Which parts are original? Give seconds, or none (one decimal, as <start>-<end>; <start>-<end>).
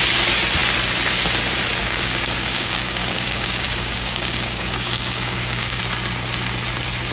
0.0-1.8; 5.8-7.1